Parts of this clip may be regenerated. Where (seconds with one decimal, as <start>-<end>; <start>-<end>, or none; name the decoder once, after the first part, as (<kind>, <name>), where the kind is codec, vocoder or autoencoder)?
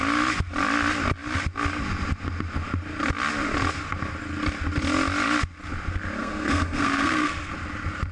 6.2-7.5 (codec, SNAC)